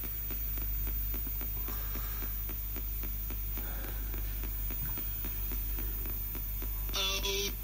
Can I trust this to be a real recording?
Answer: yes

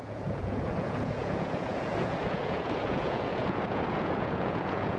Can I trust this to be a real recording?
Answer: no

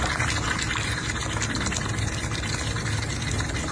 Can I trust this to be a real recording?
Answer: yes